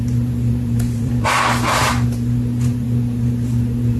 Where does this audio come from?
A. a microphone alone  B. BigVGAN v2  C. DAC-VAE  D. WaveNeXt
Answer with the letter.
B